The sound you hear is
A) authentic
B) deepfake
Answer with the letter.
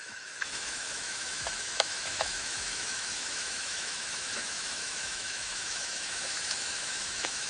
B